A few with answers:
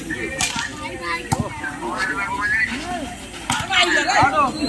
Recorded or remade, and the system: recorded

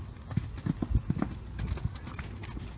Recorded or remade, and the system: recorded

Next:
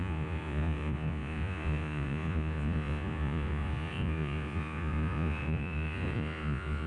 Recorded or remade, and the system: remade, vocoder, Vocos